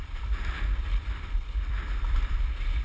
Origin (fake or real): fake